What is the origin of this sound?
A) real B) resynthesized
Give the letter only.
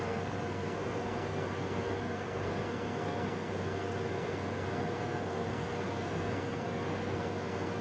B